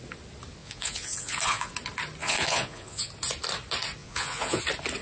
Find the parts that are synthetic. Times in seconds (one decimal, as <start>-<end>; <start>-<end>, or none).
0.6-1.7; 2.2-3.1; 4.0-4.6